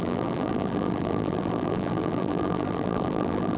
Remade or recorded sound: remade